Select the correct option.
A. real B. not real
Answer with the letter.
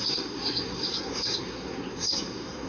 B